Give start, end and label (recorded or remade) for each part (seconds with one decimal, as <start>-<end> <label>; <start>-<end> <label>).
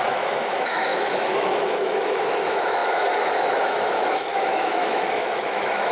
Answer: 0.0-5.9 remade